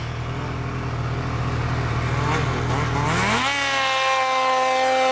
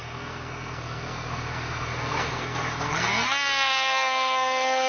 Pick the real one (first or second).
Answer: first